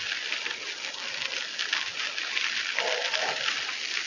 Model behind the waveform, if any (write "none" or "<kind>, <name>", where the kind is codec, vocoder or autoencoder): none